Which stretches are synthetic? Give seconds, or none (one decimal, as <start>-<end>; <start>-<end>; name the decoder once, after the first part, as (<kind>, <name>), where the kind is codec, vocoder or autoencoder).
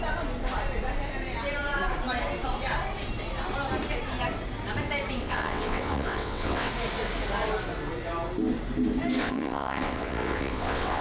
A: 5.2-6.7 (vocoder, WaveNeXt); 9.2-11.0